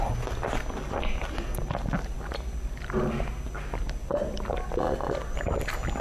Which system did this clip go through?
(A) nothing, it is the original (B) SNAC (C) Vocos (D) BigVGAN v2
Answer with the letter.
A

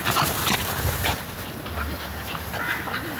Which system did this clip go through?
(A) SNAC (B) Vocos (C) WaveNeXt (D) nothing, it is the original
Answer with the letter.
D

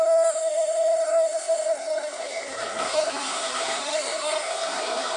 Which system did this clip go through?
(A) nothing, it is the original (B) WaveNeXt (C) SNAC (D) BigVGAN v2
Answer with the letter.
C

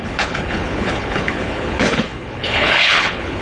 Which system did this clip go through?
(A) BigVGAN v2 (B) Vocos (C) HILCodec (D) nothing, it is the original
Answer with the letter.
C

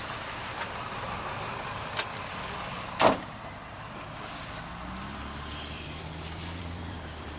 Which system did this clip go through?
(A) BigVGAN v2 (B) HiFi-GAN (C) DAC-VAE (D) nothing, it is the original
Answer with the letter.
A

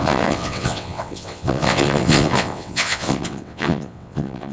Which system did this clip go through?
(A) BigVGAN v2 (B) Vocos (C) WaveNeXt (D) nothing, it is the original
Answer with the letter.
C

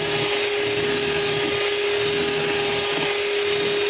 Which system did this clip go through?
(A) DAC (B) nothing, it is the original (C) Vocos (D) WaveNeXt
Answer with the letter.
B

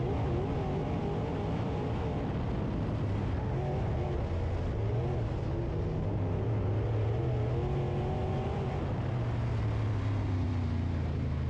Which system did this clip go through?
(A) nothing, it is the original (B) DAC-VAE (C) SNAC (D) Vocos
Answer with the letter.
A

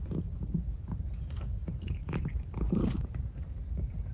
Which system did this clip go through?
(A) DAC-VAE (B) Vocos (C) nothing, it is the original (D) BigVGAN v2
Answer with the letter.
D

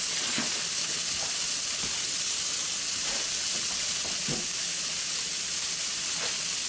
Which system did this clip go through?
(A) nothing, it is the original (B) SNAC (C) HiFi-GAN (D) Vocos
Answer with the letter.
A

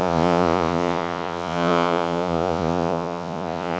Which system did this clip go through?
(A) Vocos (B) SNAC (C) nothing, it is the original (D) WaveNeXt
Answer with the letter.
A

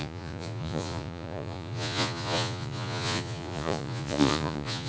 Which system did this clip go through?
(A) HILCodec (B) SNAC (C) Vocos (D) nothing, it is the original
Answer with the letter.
C